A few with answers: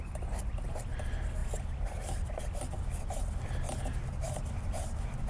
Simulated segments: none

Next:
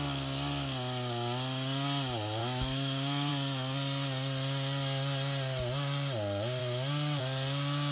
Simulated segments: 2.4-3.3 (autoencoder, DAC-VAE)

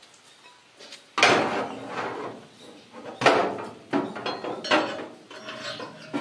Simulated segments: none